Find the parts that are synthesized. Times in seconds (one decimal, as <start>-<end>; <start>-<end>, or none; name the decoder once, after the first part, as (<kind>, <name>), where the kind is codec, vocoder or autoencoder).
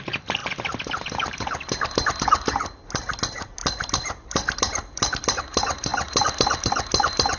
3.6-5.4 (vocoder, BigVGAN v2); 5.9-6.6